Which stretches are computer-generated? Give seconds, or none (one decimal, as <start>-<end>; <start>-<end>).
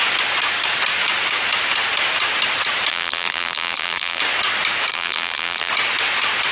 2.9-4.2; 4.9-5.7